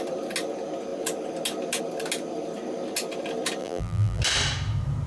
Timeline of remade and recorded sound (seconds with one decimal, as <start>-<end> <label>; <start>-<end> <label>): 0.0-3.6 recorded; 3.6-4.2 remade; 4.2-5.1 recorded